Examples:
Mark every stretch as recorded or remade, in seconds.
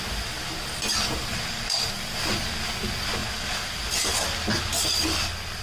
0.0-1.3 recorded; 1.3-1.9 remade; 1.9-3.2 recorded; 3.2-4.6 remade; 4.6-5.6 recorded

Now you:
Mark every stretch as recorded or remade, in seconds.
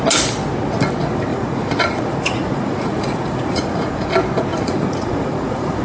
0.0-1.3 recorded; 1.3-4.1 remade; 4.1-4.5 recorded; 4.5-5.8 remade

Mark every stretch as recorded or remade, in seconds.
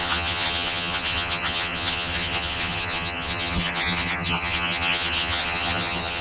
0.0-6.2 remade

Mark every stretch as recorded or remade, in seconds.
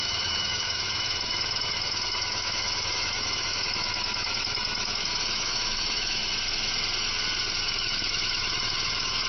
0.0-6.2 remade; 6.2-7.6 recorded; 7.6-9.3 remade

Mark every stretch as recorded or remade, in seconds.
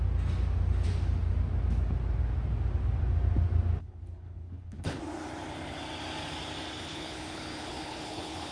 0.0-3.8 recorded; 3.8-5.0 remade; 5.0-6.8 recorded; 6.8-8.5 remade